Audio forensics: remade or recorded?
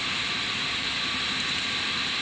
remade